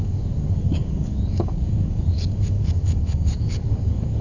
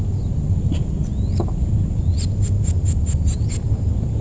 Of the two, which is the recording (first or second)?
second